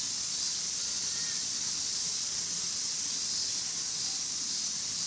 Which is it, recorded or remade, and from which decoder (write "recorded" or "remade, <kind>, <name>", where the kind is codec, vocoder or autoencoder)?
recorded